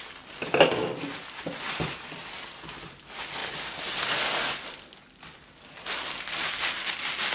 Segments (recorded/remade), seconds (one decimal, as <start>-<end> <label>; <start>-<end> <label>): 0.0-3.4 recorded; 3.4-6.5 remade; 6.5-7.3 recorded